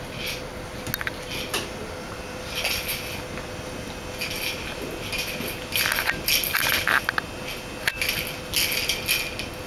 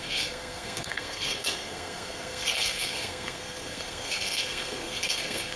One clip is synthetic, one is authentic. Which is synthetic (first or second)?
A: second